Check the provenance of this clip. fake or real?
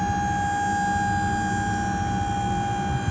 real